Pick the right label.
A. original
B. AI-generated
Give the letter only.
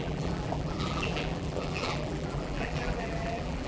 B